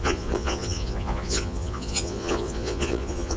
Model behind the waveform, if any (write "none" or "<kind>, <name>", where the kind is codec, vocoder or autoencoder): vocoder, Vocos